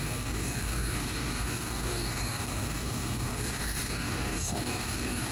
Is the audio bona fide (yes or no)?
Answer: no